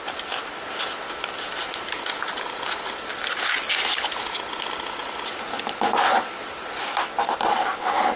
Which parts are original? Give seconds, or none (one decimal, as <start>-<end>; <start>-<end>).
0.0-5.5; 6.4-8.2